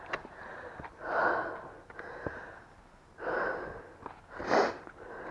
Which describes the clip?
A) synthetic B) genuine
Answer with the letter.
B